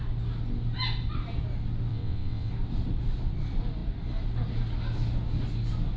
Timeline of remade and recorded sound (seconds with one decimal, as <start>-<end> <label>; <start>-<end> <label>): 0.0-1.9 recorded; 1.9-2.5 remade; 2.5-6.0 recorded